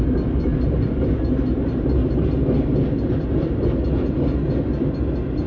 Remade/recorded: recorded